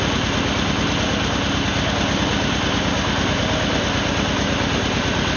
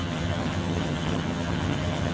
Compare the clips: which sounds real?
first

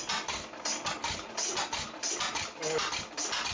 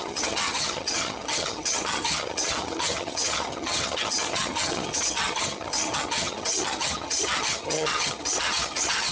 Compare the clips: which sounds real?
first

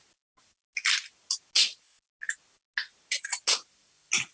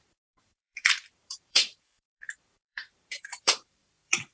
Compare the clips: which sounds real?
first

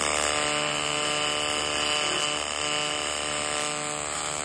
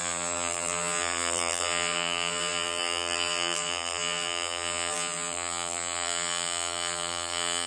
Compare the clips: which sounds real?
first